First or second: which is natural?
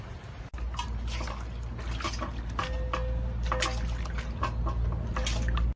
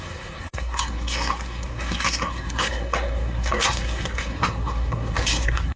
first